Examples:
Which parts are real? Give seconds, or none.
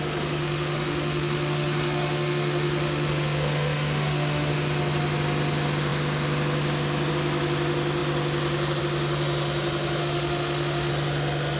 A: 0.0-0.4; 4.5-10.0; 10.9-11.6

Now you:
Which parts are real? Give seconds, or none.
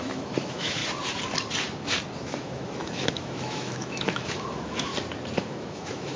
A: 0.8-2.2; 4.9-5.4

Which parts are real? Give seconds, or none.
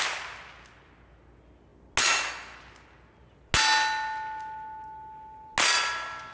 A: 0.0-6.3